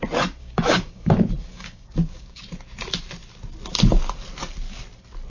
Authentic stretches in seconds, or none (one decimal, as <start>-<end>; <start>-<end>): 0.0-0.4; 1.1-1.5; 2.4-5.3